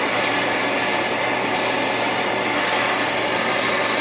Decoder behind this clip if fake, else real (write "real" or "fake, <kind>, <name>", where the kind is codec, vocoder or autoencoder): real